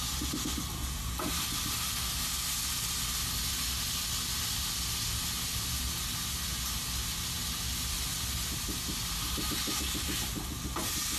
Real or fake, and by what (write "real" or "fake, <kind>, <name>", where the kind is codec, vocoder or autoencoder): real